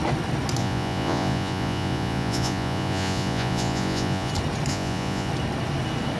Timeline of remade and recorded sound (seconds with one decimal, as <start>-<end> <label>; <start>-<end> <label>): 0.0-0.6 recorded; 0.6-4.3 remade; 4.3-4.7 recorded; 4.7-5.3 remade; 5.3-6.2 recorded